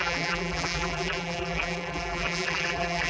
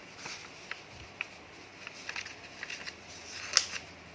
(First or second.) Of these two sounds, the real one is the second